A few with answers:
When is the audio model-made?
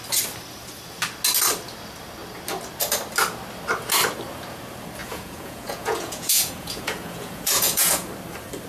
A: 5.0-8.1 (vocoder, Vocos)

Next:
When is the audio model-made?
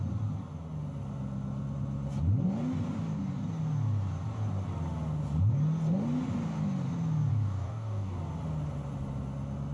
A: 7.3-8.2 (codec, DAC)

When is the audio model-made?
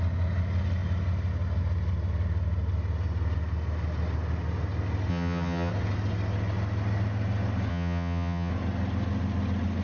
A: 5.1-5.7 (vocoder, HiFi-GAN); 7.7-8.5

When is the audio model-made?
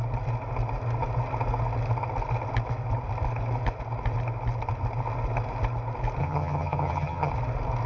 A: 6.2-7.3 (vocoder, HiFi-GAN)